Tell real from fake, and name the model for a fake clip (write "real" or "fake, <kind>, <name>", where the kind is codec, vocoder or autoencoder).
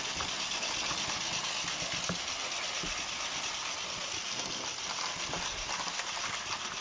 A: real